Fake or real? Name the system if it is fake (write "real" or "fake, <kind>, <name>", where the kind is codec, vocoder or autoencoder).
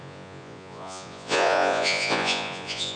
fake, vocoder, Vocos